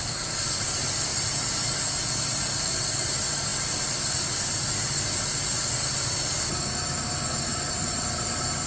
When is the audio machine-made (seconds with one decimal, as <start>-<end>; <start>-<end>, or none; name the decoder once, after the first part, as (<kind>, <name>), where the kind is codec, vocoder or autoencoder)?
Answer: 0.0-1.1 (vocoder, BigVGAN v2); 2.5-3.5; 7.7-8.7